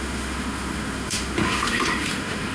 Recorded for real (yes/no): no